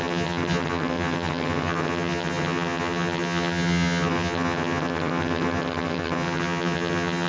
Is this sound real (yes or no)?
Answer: no